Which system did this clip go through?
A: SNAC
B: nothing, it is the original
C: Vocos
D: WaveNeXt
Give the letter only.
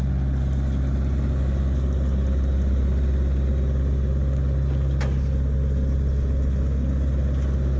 B